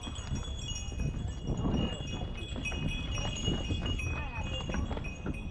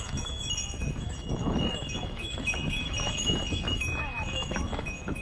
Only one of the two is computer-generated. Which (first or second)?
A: second